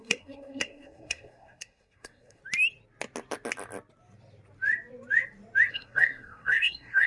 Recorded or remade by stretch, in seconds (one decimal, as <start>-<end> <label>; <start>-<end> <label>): 0.0-2.4 remade; 2.4-5.7 recorded; 5.7-7.1 remade